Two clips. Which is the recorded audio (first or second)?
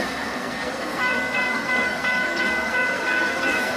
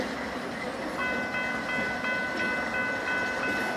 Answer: second